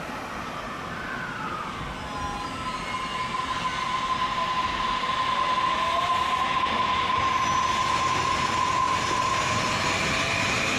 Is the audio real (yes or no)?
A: yes